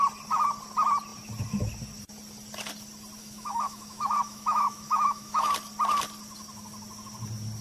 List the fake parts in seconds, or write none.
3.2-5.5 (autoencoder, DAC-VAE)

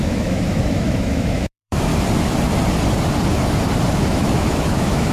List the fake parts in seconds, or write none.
0.0-1.9 (autoencoder, DAC-VAE); 3.9-5.1

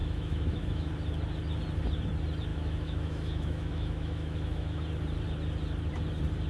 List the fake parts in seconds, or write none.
0.0-0.9 (autoencoder, DAC-VAE); 2.5-4.8

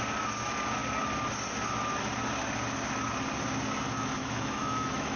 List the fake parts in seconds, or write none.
4.2-5.2 (autoencoder, DAC-VAE)

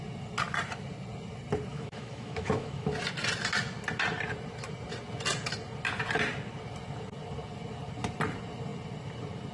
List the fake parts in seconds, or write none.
1.7-2.9 (autoencoder, DAC-VAE)

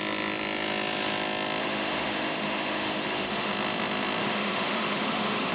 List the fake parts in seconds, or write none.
1.6-3.5 (autoencoder, DAC-VAE); 4.2-5.5

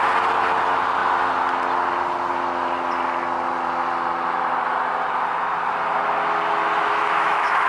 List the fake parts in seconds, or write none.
6.9-7.7 (autoencoder, DAC-VAE)

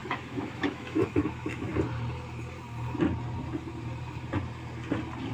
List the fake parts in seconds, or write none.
0.0-1.7 (autoencoder, DAC-VAE)